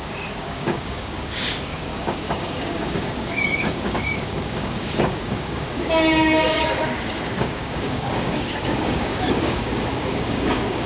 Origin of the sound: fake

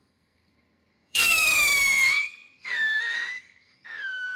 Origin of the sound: fake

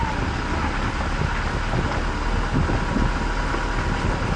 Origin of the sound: real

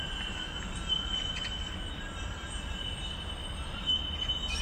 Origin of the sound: real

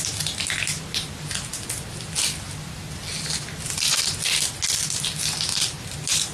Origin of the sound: real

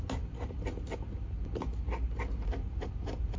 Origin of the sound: real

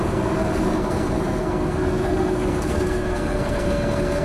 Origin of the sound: fake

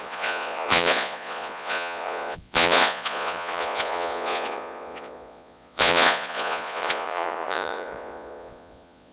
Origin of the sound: fake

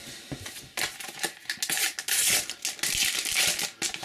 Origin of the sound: real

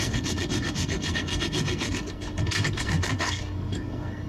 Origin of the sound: fake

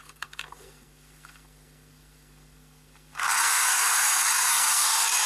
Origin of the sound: fake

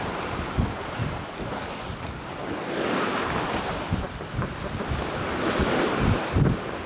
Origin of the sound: real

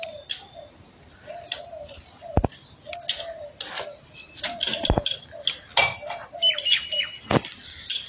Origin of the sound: real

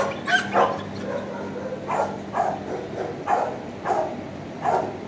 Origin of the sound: real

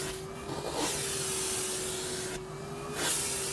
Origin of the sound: real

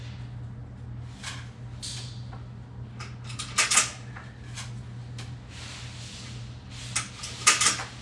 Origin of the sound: real